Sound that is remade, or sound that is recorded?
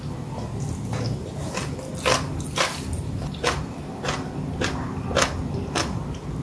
recorded